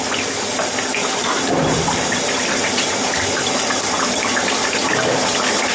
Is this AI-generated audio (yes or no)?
yes